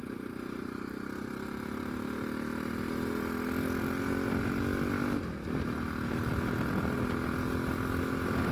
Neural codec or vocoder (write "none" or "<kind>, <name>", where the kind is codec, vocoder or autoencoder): none